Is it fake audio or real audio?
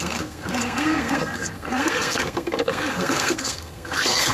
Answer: fake